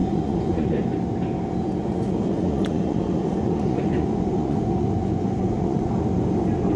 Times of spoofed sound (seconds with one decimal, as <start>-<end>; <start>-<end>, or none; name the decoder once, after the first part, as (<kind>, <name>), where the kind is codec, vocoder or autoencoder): 0.0-0.8 (vocoder, Vocos); 1.8-5.9